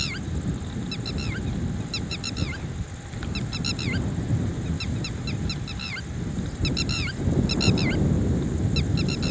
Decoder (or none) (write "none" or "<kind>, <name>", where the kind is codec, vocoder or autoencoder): none